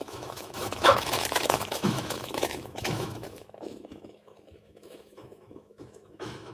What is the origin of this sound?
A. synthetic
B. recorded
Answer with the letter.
A